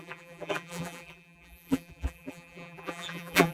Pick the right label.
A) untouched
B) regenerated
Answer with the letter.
B